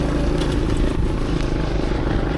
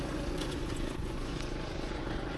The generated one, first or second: second